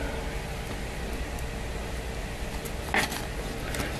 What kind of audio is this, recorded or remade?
recorded